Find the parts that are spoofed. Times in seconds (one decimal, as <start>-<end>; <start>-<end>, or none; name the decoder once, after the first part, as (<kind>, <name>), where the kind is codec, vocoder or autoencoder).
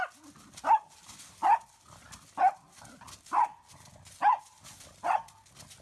none